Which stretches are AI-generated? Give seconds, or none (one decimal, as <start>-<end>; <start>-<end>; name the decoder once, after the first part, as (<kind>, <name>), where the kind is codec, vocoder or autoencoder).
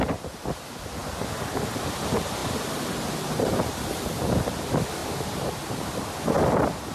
5.0-5.9 (vocoder, BigVGAN v2)